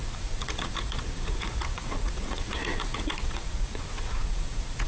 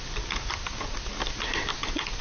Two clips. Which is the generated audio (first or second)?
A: first